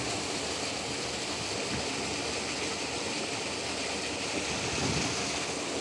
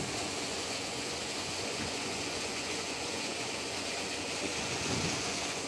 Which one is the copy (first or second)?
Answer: second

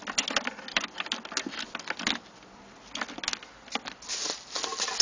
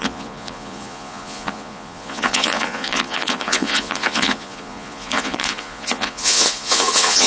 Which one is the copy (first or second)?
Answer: second